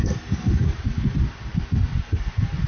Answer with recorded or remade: recorded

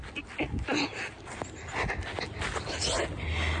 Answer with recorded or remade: recorded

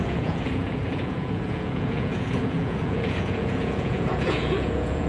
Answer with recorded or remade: remade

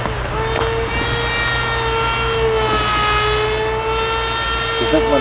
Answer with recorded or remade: recorded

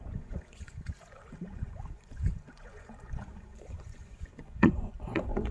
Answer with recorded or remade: remade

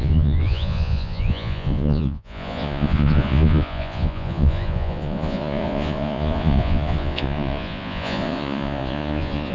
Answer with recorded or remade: remade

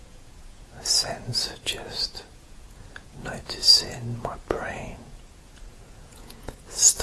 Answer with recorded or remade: remade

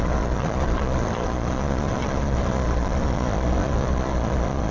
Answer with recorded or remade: remade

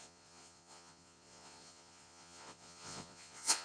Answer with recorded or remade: remade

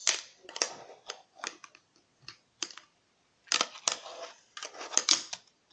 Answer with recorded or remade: recorded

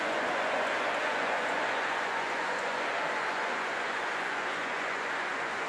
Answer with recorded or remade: remade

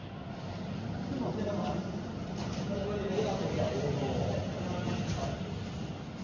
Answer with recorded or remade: recorded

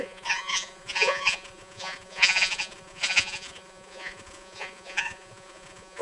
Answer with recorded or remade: remade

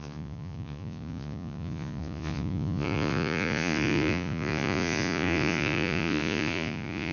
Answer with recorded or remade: remade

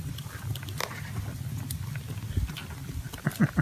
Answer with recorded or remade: recorded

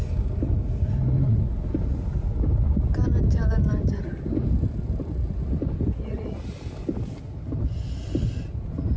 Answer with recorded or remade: recorded